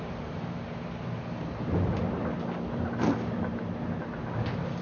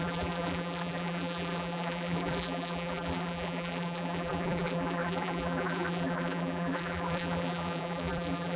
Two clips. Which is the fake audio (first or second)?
second